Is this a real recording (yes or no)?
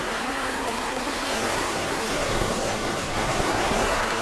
no